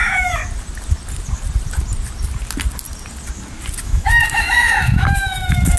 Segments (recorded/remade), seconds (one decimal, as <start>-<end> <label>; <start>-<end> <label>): 0.0-0.4 remade; 0.4-3.8 recorded; 3.8-5.8 remade